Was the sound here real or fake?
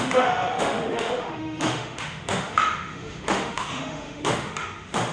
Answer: fake